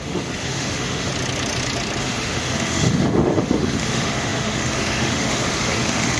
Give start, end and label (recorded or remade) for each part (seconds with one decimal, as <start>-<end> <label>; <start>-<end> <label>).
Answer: 0.0-1.1 remade; 1.1-2.0 recorded; 2.0-6.2 remade